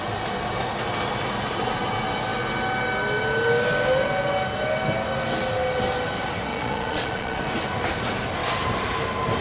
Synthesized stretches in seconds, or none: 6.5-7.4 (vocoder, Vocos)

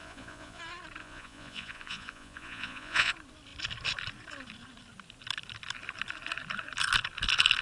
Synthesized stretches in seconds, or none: 0.0-0.6 (vocoder, Vocos); 1.0-3.1

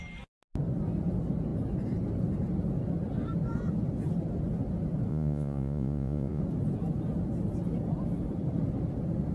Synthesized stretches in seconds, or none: 5.1-6.4 (vocoder, Vocos)

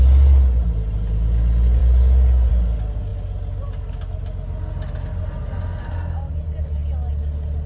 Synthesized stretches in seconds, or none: none